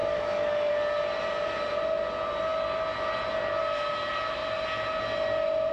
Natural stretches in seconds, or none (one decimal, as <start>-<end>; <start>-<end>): 0.7-5.7